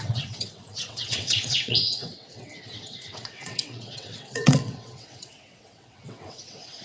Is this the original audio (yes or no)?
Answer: no